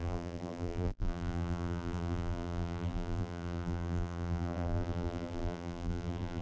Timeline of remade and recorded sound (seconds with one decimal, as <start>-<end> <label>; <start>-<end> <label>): 0.0-6.4 remade